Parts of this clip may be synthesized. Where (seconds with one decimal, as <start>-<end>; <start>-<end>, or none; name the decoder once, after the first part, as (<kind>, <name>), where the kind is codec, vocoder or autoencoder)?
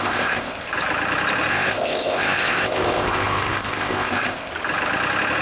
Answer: 0.0-0.7 (codec, ZipCodec); 1.5-4.5